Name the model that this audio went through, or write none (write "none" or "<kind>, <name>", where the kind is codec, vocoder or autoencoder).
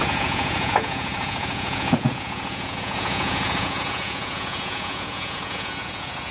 vocoder, Vocos